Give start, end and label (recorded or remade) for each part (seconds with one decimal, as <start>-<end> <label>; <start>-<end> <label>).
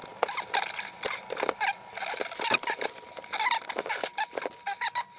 0.0-5.2 recorded